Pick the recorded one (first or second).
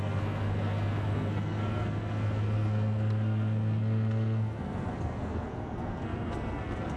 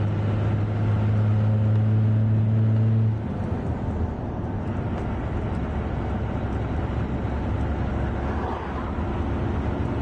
second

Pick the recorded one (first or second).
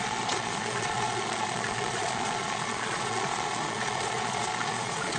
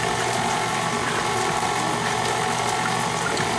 second